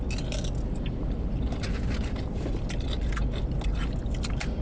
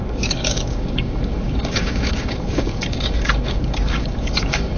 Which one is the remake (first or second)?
second